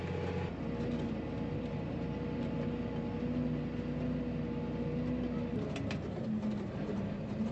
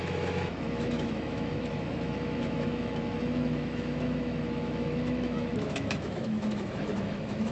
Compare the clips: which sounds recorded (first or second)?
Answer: first